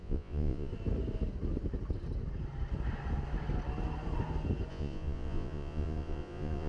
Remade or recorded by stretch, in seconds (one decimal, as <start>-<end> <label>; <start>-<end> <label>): 0.0-0.7 remade; 0.7-4.7 recorded; 4.7-6.7 remade